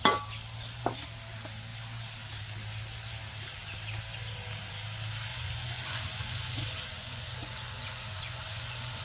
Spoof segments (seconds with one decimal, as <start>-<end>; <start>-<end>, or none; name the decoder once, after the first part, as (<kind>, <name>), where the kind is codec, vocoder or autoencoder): 5.3-9.0 (vocoder, Vocos)